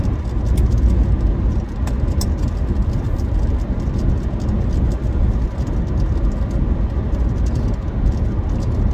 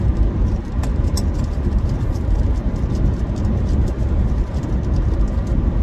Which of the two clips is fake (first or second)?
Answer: second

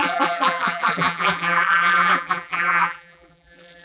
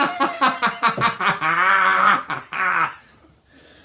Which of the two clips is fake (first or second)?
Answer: first